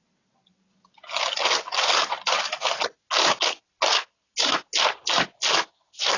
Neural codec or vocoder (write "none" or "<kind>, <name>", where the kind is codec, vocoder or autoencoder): none